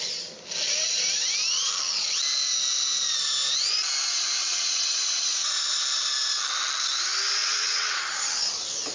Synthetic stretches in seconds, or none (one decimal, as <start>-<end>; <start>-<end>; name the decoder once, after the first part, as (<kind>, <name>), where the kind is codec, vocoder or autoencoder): 4.4-5.5 (vocoder, WaveNeXt); 7.4-8.0